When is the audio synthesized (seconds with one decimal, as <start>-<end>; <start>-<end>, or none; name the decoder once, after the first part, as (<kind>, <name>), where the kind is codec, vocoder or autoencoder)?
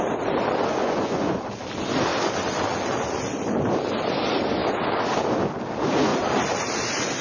0.8-1.4 (vocoder, Vocos)